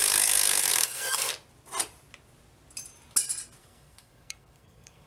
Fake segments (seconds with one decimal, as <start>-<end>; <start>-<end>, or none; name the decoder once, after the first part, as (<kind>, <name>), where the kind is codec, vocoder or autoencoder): 0.0-1.3 (codec, SNAC); 3.6-5.1